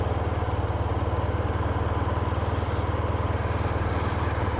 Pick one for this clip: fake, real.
real